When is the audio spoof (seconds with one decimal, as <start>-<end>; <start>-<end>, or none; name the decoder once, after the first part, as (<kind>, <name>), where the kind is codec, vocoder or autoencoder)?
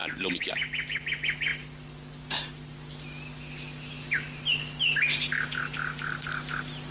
0.0-0.5 (autoencoder, DAC-VAE)